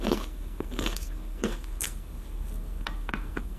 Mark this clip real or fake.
fake